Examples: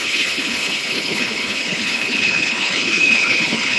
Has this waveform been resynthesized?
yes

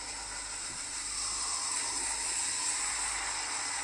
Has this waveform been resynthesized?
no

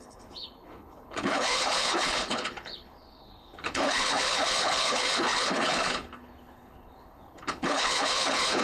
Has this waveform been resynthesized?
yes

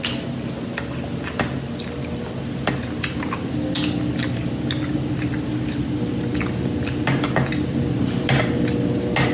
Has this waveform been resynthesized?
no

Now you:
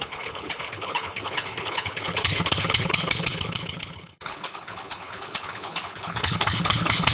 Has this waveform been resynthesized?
yes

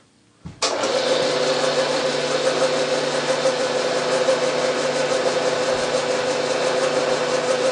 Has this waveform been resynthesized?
no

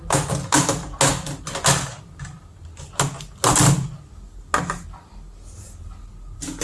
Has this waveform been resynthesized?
no